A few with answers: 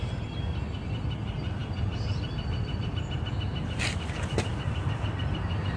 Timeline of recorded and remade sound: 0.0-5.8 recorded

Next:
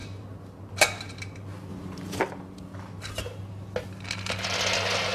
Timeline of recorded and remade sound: 0.0-1.7 recorded; 1.7-2.2 remade; 2.2-5.1 recorded